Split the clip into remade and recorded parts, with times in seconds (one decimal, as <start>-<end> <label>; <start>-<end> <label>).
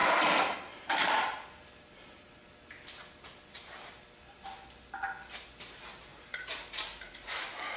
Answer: 0.0-1.1 remade; 1.1-6.1 recorded; 6.1-7.8 remade